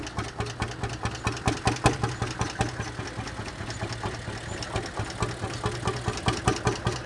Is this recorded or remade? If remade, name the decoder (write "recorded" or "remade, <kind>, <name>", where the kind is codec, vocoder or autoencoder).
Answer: recorded